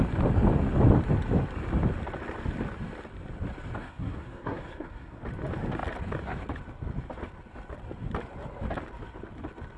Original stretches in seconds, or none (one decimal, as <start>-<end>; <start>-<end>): 0.0-3.8; 5.2-9.8